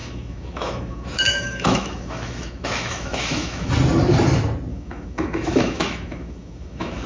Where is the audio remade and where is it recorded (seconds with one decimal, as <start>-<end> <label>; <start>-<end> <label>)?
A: 0.0-3.7 remade; 3.7-4.7 recorded; 4.7-7.1 remade